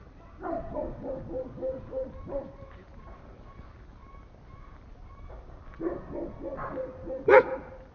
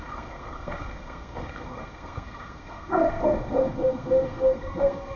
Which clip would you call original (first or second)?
first